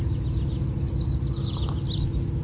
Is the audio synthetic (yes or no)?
no